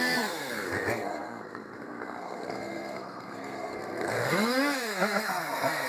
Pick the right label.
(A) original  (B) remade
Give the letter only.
B